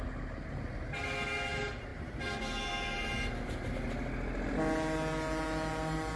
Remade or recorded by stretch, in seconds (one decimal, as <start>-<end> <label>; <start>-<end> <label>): 0.0-6.2 recorded